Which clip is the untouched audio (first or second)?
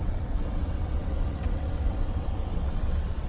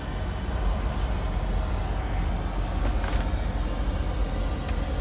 second